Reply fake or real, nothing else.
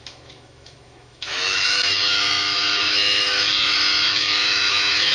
fake